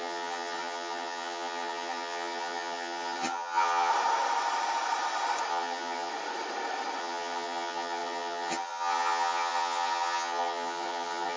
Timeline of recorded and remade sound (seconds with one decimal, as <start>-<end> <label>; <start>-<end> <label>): 0.0-3.9 remade; 3.9-5.5 recorded; 5.5-6.1 remade; 6.1-7.0 recorded; 7.0-11.4 remade